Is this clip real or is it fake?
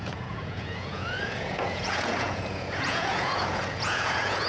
fake